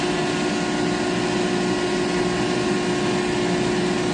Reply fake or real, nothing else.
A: real